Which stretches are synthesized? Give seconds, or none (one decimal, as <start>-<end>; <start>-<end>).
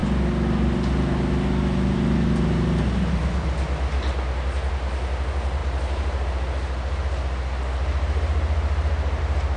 none